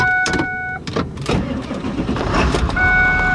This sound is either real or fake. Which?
fake